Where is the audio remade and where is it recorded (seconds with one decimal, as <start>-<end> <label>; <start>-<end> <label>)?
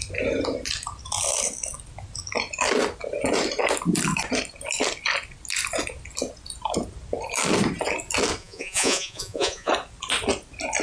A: 0.0-8.4 recorded; 8.4-9.7 remade; 9.7-10.8 recorded